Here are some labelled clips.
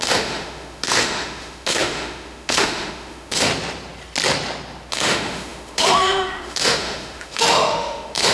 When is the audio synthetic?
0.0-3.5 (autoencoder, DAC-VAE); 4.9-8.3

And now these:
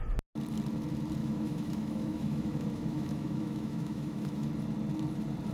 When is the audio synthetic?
1.2-4.5 (autoencoder, DAC-VAE)

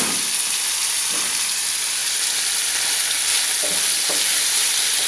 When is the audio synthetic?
none

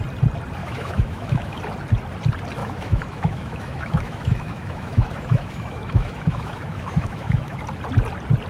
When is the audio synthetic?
0.6-1.6 (autoencoder, DAC-VAE); 2.6-7.6

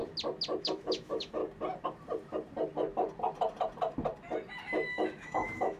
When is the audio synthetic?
0.6-1.4 (autoencoder, DAC-VAE); 4.9-5.8

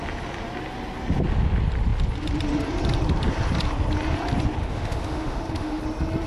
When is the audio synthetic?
4.6-5.8 (autoencoder, DAC-VAE)

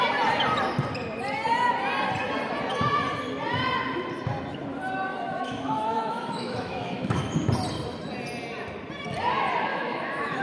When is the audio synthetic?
5.1-7.3 (autoencoder, DAC-VAE); 9.7-10.4